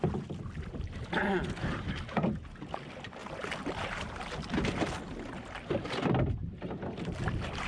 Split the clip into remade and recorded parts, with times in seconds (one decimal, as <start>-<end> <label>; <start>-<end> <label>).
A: 0.0-3.2 remade; 3.2-5.8 recorded; 5.8-7.7 remade